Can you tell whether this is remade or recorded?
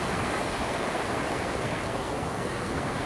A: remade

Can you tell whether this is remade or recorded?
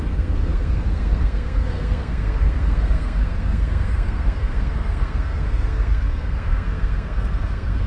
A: remade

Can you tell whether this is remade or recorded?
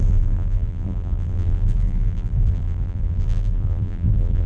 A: remade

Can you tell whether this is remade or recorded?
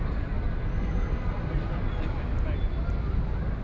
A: recorded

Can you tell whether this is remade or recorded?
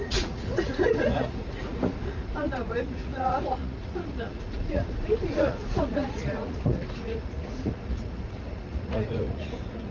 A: remade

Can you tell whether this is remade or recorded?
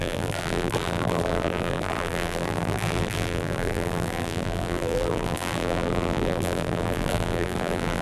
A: remade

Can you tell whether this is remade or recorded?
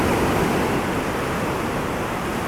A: recorded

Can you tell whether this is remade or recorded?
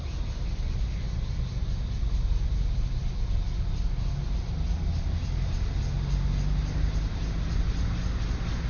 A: recorded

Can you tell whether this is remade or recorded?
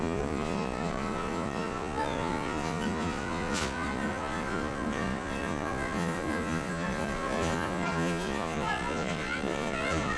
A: remade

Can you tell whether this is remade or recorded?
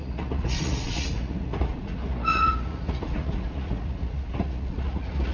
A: remade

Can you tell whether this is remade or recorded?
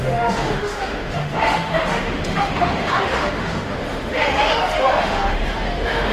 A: remade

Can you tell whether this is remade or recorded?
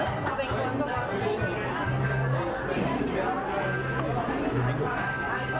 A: recorded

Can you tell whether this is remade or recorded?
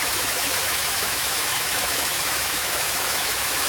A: remade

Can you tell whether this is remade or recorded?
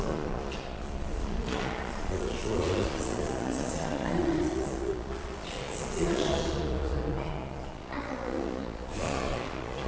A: remade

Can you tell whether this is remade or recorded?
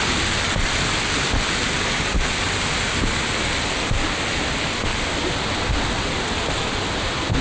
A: recorded